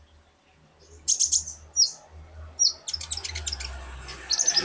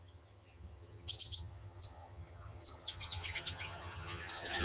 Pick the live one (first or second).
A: first